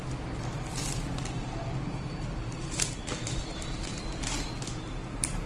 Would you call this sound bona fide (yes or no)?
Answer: yes